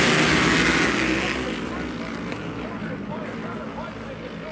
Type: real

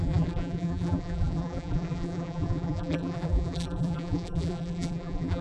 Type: fake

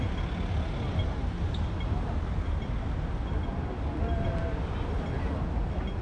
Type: real